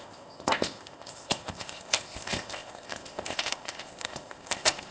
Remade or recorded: remade